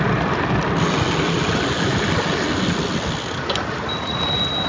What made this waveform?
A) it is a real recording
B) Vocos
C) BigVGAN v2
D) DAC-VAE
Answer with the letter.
A